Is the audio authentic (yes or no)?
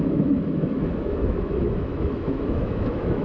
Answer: no